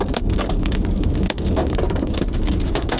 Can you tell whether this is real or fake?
fake